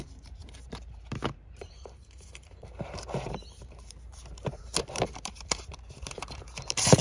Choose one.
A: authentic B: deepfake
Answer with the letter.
B